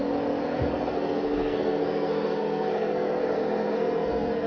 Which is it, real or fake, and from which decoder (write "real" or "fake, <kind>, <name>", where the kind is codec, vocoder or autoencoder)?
fake, codec, SNAC